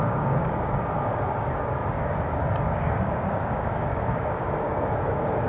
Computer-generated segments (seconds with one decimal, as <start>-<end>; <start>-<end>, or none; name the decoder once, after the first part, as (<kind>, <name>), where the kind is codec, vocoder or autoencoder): 0.0-5.5 (codec, DAC)